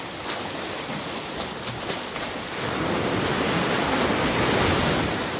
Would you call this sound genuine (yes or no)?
no